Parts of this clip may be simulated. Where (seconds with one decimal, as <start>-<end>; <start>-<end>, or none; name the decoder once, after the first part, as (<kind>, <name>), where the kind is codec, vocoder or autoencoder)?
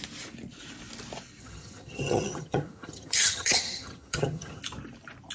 1.4-4.6 (vocoder, HiFi-GAN)